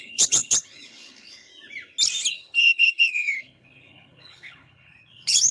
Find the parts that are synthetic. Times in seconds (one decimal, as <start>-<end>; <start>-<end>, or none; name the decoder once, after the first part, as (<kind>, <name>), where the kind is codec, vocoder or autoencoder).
0.0-1.5 (codec, HILCodec); 2.3-5.5